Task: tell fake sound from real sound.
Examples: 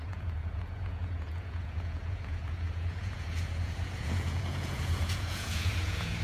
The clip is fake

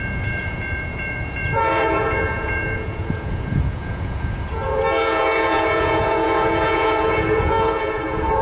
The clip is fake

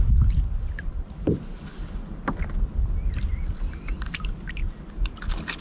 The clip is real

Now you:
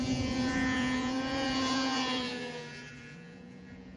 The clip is fake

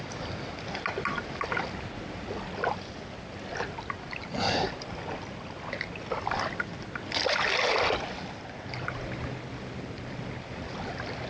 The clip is real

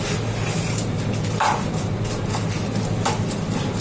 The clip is real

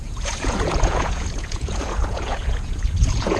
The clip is fake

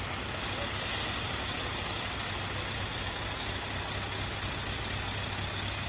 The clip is real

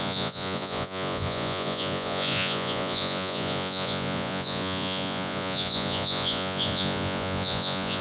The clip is fake